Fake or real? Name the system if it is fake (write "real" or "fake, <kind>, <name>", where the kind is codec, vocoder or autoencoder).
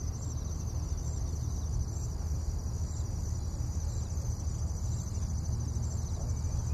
real